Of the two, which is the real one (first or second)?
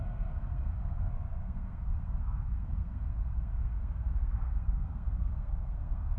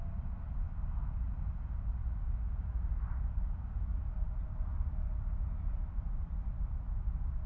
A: second